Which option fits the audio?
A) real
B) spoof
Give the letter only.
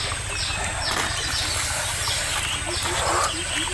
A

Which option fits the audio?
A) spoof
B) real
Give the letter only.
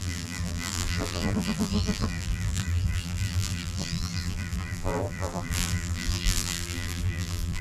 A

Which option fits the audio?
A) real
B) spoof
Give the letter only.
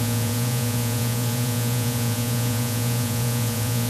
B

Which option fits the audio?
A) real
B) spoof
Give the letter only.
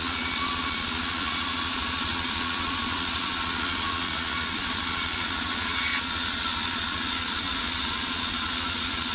B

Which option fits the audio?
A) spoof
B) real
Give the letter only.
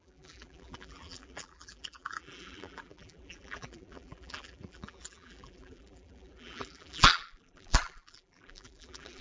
A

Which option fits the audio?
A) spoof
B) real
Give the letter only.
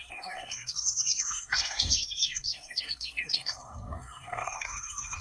A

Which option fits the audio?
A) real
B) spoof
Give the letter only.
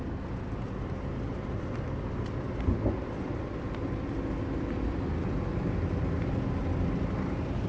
A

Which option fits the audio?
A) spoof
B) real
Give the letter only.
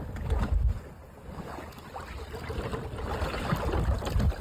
B